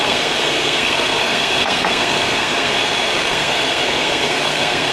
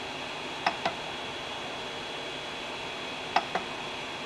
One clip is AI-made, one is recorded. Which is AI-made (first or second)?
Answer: first